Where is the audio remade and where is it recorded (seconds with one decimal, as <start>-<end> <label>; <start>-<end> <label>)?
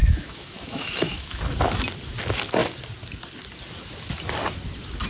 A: 0.0-1.4 remade; 1.4-5.1 recorded